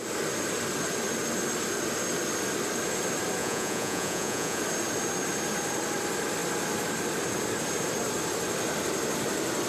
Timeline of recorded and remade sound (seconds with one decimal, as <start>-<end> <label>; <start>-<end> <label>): 0.0-3.4 recorded; 3.4-4.6 remade; 4.6-9.7 recorded